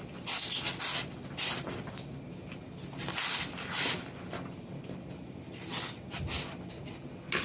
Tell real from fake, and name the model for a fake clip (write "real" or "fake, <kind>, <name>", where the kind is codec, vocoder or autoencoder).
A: real